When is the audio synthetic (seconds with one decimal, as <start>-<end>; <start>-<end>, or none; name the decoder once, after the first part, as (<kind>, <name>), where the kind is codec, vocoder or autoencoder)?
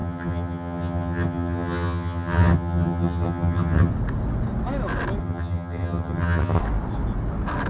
0.0-3.9 (vocoder, HiFi-GAN); 5.2-6.6